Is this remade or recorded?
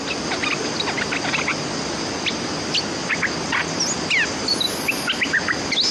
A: recorded